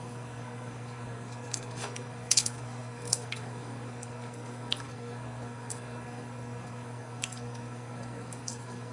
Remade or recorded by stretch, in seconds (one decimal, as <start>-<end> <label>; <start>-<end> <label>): 0.0-8.9 remade